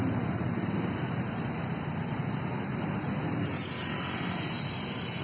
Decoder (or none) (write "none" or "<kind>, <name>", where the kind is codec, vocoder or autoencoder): none